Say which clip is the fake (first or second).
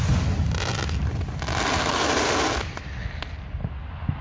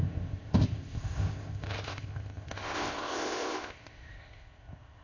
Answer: second